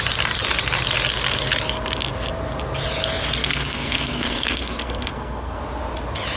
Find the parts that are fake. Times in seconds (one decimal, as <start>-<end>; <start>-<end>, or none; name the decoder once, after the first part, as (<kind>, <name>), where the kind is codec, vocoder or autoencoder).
3.4-5.6 (codec, SNAC)